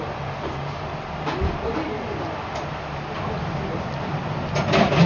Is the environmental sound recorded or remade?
recorded